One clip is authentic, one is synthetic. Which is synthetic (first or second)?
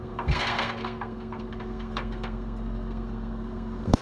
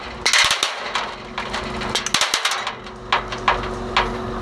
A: first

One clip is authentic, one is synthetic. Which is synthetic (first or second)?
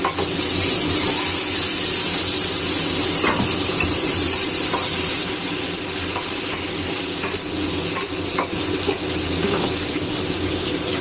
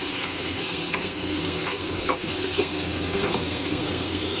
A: second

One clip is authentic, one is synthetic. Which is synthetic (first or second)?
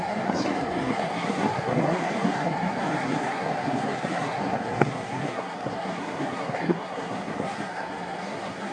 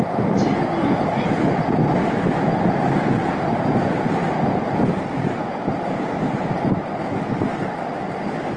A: first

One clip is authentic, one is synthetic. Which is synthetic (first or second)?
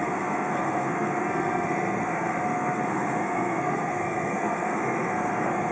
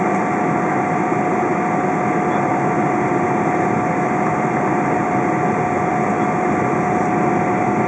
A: first